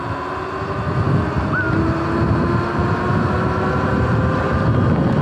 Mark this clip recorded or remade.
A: recorded